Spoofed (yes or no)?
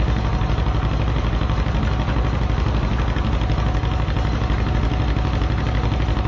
no